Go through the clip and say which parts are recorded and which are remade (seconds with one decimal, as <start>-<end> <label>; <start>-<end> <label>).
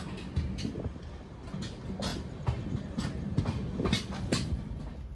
0.0-2.1 recorded; 2.1-3.4 remade; 3.4-4.3 recorded; 4.3-4.8 remade; 4.8-5.2 recorded